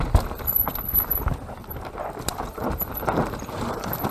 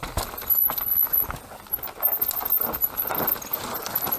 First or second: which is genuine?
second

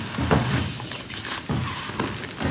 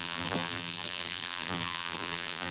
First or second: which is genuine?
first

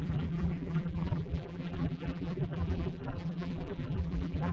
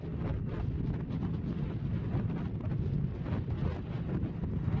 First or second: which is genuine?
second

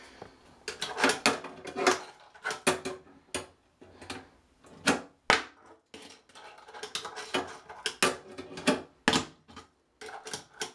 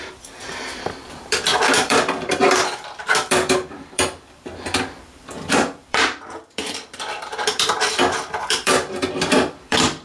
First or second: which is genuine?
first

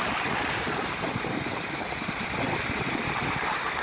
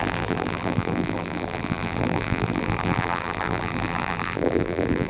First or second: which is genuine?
first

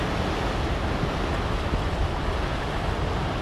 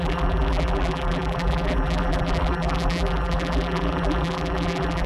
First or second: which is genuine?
first